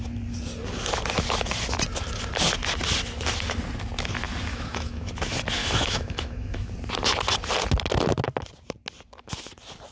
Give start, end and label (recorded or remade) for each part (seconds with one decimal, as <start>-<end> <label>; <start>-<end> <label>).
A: 0.0-4.5 recorded; 4.5-5.1 remade; 5.1-5.6 recorded; 5.6-6.7 remade; 6.7-9.9 recorded